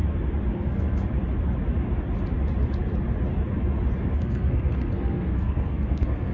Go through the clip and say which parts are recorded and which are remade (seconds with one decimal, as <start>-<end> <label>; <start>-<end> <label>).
0.0-0.5 recorded; 0.5-1.1 remade; 1.1-4.0 recorded; 4.0-6.3 remade